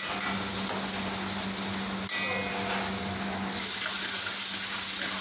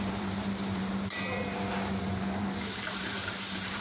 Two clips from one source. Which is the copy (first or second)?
second